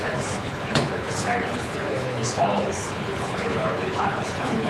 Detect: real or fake fake